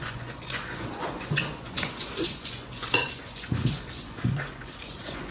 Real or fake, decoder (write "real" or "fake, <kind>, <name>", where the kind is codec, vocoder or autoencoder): fake, vocoder, Vocos